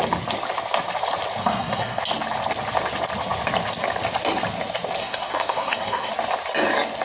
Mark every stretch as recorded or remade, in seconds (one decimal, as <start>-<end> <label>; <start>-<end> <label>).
0.0-1.4 recorded; 1.4-2.0 remade; 2.0-5.0 recorded; 5.0-6.1 remade; 6.1-7.0 recorded